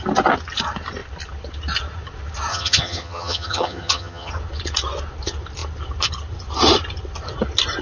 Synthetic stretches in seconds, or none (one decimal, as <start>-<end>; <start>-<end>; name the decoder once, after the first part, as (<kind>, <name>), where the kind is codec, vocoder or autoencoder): 2.5-4.3 (vocoder, HiFi-GAN)